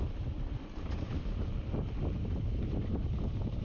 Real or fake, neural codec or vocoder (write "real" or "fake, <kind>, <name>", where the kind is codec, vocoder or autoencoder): real